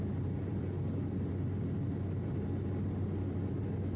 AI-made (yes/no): no